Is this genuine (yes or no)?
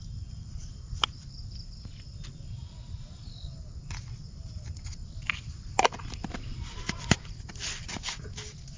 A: yes